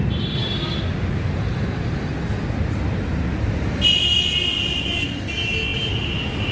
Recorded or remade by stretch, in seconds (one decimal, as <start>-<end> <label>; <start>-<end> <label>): 0.0-5.7 recorded; 5.7-6.5 remade